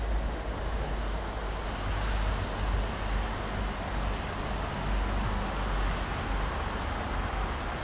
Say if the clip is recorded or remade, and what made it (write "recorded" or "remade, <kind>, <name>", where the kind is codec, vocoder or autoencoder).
recorded